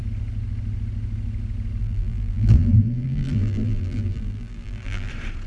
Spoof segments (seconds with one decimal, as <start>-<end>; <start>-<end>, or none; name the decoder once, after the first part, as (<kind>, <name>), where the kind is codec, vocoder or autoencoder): 1.8-5.1 (vocoder, BigVGAN v2)